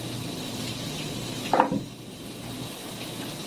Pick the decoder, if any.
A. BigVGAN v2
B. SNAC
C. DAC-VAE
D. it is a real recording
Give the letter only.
D